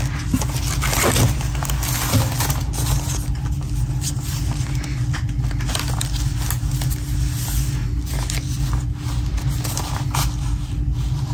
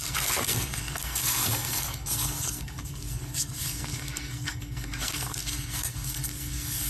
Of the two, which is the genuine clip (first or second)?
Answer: first